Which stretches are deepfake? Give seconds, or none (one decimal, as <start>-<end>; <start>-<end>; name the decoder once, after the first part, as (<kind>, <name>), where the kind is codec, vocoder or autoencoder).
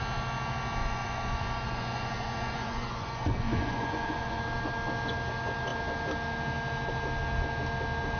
0.8-4.4 (vocoder, Vocos)